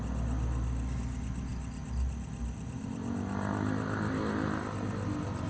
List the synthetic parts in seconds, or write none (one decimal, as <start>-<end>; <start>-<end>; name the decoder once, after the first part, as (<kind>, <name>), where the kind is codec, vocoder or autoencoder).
none